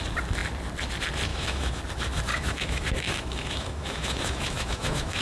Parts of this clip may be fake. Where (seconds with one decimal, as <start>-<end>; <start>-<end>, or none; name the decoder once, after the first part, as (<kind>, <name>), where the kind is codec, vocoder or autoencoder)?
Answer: 1.3-1.8 (autoencoder, DAC-VAE); 2.3-5.2